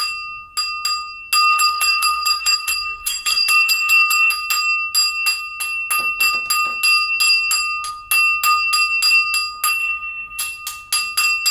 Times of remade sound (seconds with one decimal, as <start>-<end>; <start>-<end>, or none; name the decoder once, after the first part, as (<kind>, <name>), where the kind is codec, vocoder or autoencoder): 1.5-4.3 (codec, SNAC); 9.8-10.4